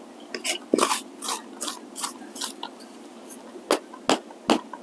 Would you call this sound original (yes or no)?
yes